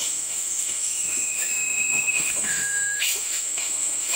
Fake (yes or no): yes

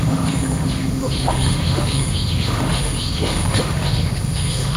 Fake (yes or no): yes